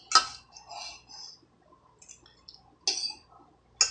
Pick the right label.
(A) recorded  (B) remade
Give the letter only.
A